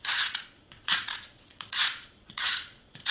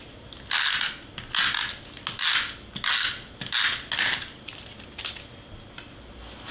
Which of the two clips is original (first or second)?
second